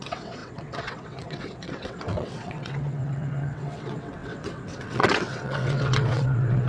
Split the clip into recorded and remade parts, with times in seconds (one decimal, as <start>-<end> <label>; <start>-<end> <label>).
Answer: 0.0-6.7 remade